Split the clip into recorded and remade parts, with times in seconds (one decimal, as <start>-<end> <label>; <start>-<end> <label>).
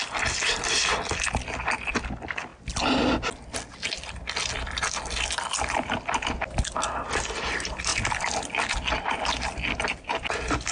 0.0-10.7 recorded